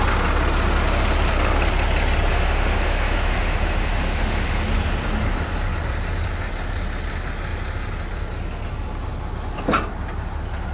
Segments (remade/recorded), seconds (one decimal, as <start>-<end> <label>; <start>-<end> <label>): 0.0-2.3 recorded; 2.3-4.7 remade; 4.7-10.7 recorded